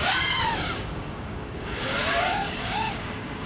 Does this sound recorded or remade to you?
remade